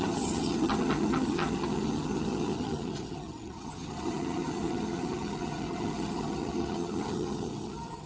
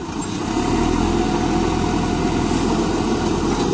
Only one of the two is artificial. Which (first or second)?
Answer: first